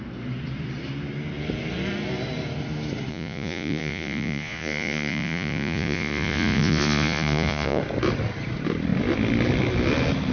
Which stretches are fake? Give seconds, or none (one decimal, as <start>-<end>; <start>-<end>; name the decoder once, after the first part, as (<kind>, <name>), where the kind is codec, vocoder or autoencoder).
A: 3.1-7.8 (vocoder, Vocos)